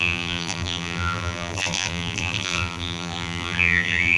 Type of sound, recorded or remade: remade